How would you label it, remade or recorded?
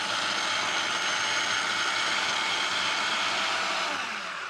recorded